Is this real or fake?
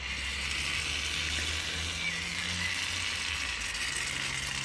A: real